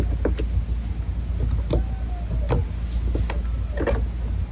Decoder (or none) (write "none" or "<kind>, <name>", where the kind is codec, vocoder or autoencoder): none